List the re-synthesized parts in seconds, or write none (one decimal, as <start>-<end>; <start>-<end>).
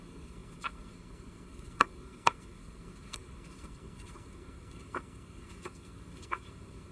0.0-6.9